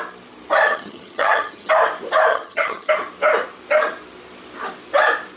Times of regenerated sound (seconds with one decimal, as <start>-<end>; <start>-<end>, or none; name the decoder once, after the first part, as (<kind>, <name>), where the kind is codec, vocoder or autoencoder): 0.7-1.7 (vocoder, HiFi-GAN); 2.3-2.9